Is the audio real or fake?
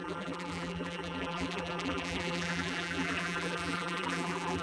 fake